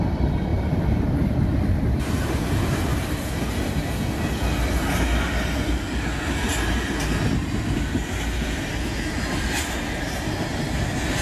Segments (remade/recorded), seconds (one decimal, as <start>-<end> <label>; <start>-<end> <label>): 0.0-11.2 recorded